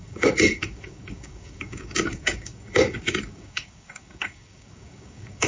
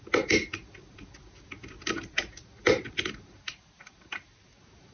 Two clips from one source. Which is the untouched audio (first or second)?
second